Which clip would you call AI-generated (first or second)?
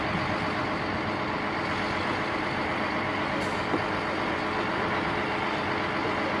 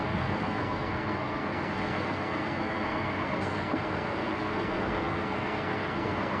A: second